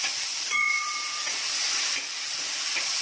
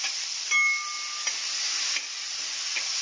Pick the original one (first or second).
second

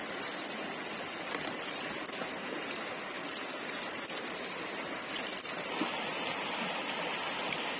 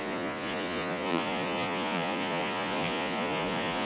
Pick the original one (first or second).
first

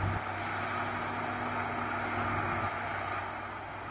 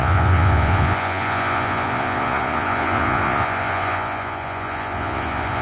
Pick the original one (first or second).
first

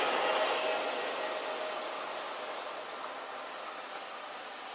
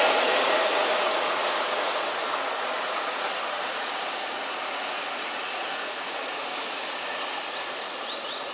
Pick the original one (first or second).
first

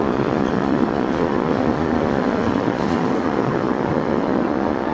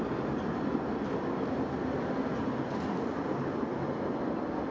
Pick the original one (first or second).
second